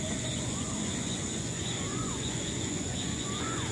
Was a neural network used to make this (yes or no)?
yes